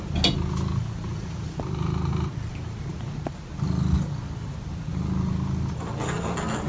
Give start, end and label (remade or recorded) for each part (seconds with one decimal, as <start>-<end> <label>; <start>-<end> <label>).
0.0-6.7 recorded